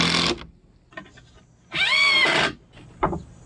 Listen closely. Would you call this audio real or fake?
real